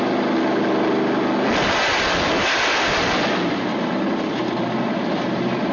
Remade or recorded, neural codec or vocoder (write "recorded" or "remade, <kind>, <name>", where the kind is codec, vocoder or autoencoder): recorded